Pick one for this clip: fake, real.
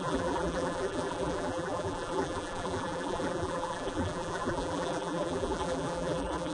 fake